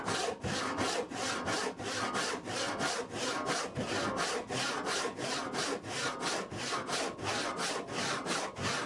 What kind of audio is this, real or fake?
real